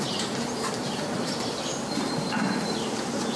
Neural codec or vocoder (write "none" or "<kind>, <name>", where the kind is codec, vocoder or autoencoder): vocoder, BigVGAN v2